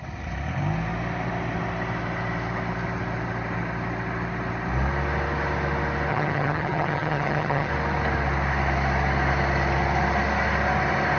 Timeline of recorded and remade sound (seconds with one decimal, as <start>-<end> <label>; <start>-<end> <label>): 0.0-6.1 recorded; 6.1-7.7 remade; 7.7-11.2 recorded